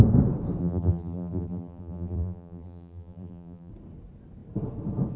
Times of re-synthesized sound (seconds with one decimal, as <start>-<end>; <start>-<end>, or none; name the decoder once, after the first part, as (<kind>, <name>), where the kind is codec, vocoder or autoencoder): 0.6-3.7 (vocoder, BigVGAN v2)